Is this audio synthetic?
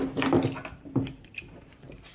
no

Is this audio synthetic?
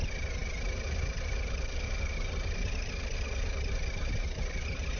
no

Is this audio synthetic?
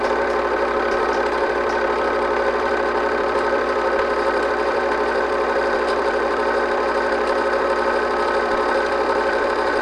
yes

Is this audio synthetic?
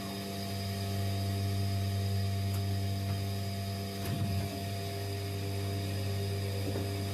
no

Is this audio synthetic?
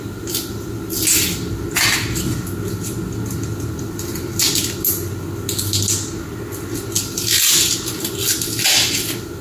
no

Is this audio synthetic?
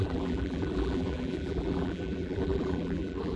yes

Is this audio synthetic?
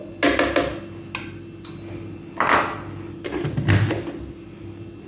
no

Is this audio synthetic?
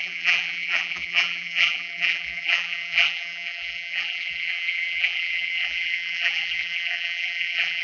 yes